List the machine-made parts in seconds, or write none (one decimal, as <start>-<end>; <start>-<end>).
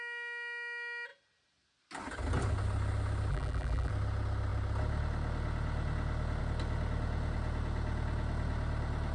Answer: 3.3-3.9